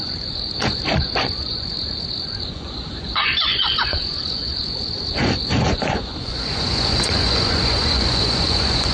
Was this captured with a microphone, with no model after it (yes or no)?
no